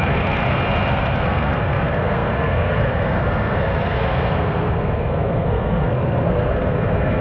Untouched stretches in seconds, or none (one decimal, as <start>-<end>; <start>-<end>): 0.4-0.9